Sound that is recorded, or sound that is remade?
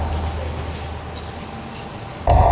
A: recorded